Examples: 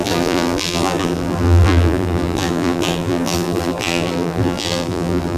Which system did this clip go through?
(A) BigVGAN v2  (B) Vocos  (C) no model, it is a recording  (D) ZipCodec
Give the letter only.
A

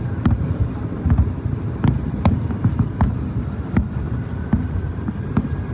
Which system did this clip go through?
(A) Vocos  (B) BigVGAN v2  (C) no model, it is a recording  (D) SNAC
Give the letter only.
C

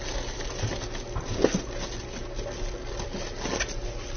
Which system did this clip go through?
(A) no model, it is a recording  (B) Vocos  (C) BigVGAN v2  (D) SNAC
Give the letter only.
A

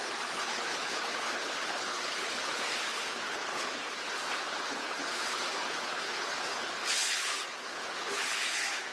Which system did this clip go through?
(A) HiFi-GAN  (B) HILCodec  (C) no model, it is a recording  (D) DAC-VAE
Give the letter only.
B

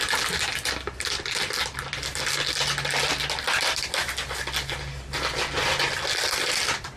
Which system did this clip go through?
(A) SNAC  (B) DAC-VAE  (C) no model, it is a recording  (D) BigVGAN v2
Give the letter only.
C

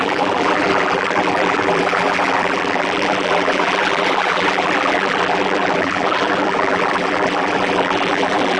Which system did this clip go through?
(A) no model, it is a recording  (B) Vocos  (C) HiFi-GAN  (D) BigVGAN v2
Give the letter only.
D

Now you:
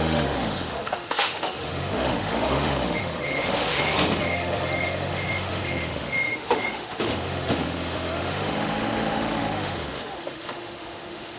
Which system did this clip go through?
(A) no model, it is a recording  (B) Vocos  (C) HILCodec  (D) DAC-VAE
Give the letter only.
D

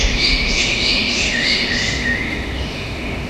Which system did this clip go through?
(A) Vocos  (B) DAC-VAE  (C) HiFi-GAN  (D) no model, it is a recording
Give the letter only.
B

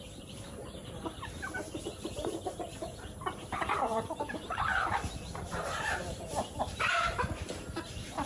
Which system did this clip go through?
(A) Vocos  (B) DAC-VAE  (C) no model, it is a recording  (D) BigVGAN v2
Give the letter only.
D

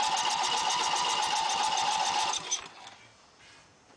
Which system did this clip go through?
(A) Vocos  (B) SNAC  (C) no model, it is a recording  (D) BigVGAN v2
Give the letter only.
C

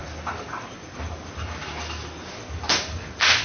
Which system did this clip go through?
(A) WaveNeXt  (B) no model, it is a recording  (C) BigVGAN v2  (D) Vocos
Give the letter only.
B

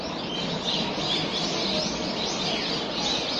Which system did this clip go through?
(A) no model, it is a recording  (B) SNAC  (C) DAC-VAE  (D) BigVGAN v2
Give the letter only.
A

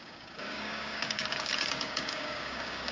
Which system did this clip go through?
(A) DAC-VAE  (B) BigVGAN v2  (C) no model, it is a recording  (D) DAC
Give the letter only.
D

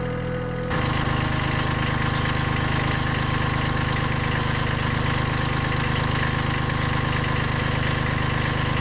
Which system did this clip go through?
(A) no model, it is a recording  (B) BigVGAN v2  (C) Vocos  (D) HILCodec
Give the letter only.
A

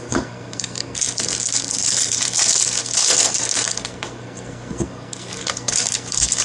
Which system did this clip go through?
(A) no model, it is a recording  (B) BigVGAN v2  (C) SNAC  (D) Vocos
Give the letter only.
C